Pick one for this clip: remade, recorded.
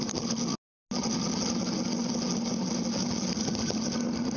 recorded